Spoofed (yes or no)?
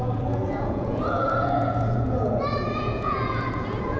yes